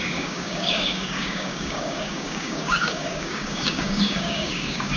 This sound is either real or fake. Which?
fake